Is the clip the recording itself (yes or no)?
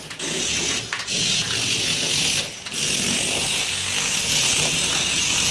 no